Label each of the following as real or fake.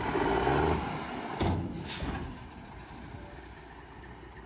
real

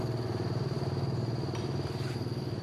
real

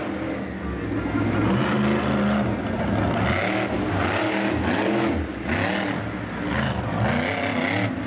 real